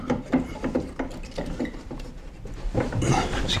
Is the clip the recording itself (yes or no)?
yes